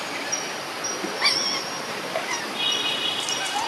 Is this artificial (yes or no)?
no